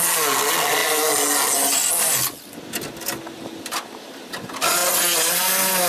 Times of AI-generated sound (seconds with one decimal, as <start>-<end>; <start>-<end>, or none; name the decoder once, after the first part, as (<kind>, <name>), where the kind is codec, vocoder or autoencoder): none